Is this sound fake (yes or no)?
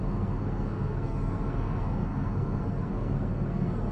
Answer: yes